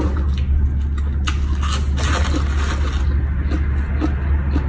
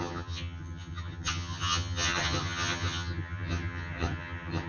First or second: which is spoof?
second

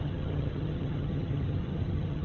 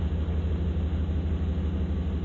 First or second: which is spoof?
first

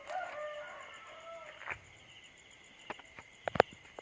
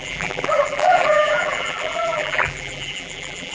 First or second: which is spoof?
second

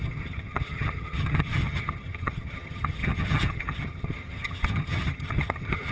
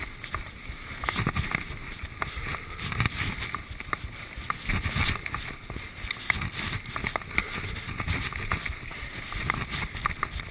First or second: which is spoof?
first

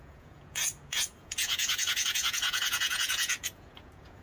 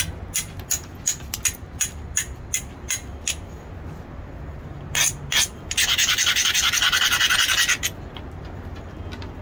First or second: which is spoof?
first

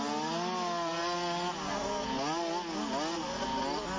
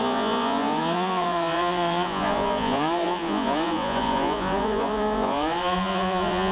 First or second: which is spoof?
second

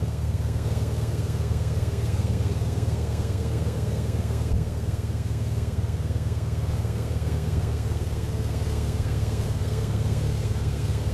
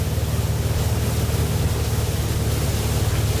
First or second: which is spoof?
first